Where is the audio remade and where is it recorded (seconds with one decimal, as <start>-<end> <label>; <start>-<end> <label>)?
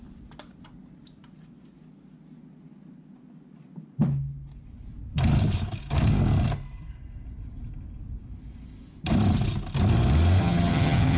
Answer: 0.0-10.4 recorded; 10.4-11.2 remade